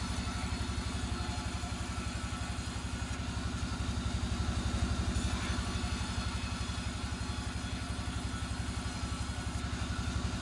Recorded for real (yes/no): yes